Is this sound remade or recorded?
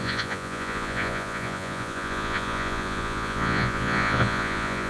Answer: remade